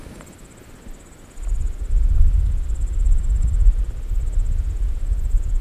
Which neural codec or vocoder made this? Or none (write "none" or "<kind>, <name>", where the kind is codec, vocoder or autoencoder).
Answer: none